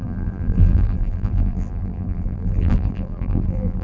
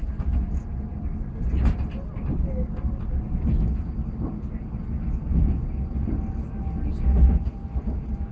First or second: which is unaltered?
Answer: second